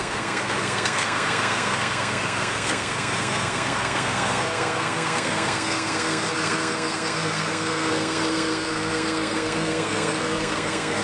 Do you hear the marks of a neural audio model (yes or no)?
yes